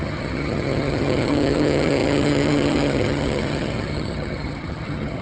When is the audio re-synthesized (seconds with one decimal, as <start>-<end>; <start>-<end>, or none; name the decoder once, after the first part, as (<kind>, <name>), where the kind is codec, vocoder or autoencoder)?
0.0-5.2 (vocoder, HiFi-GAN)